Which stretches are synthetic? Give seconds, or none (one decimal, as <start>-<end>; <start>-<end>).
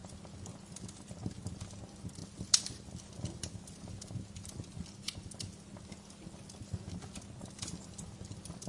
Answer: none